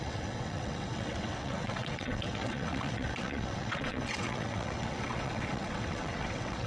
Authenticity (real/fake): fake